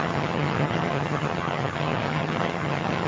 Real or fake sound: fake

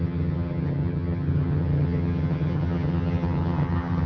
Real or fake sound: fake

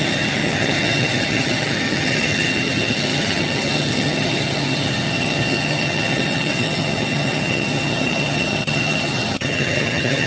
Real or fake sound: fake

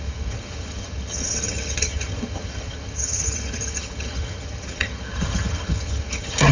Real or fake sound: fake